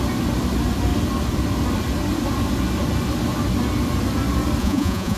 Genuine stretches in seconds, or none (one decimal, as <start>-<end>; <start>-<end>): 0.0-4.6